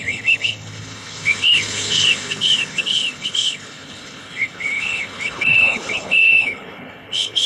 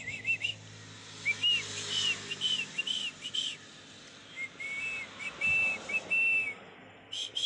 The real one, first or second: second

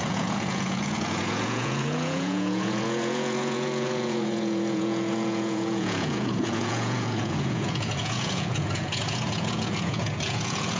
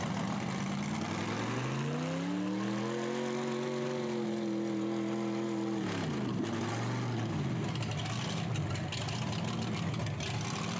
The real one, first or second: second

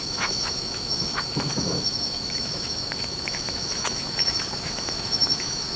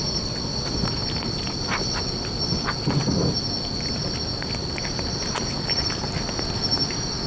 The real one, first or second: second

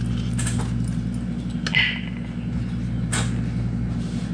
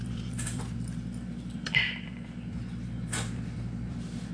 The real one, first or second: first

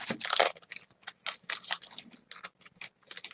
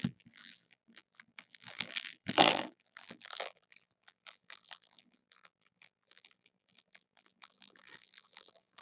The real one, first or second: first